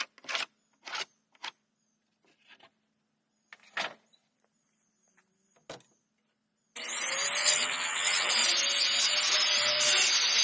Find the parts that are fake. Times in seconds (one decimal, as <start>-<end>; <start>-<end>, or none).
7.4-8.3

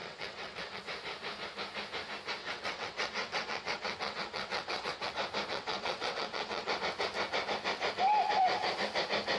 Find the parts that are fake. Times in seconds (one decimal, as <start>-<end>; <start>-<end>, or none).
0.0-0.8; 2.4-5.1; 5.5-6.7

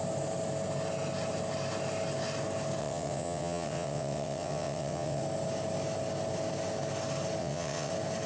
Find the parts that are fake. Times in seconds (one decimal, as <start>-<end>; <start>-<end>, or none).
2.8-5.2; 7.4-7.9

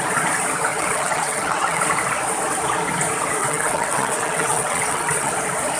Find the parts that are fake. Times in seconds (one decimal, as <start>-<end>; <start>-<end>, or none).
0.7-1.8; 3.4-5.3